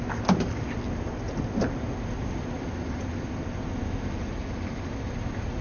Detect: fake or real real